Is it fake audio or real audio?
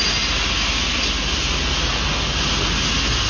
real